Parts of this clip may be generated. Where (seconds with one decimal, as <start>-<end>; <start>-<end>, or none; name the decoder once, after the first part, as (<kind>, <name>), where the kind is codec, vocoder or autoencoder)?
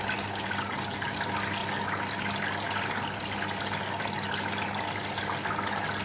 none